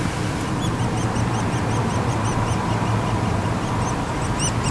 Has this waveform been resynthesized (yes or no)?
no